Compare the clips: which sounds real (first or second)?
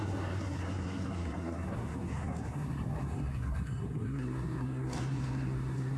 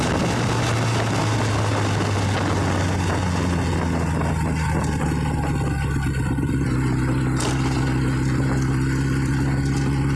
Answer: second